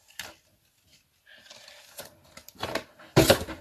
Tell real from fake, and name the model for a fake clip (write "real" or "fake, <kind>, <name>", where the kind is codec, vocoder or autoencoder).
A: real